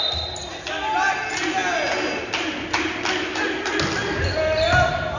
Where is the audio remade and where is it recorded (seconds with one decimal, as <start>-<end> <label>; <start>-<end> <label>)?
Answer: 0.0-5.2 recorded